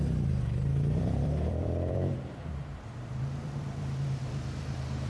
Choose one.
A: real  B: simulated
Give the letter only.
B